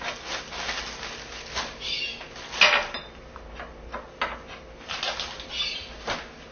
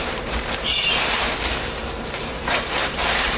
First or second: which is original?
first